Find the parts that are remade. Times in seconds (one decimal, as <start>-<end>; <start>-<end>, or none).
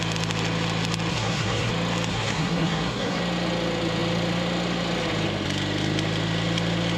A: 1.1-1.7; 2.1-3.2